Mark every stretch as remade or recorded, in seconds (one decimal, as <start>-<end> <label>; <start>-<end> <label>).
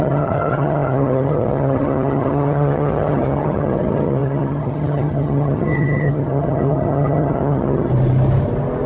0.0-7.9 remade; 7.9-8.9 recorded